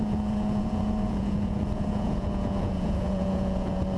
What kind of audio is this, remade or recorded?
remade